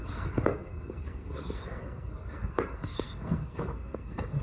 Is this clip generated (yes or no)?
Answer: yes